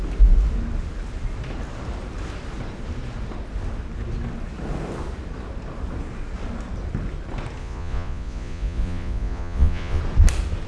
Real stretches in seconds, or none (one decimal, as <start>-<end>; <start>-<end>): 0.0-7.6; 10.0-10.7